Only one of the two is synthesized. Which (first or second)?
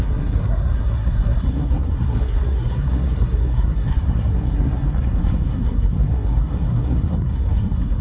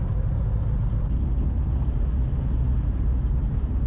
first